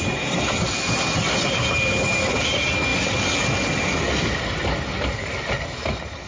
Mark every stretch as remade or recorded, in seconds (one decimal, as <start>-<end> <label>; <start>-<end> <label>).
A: 0.0-6.3 recorded